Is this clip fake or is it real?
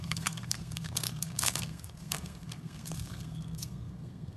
fake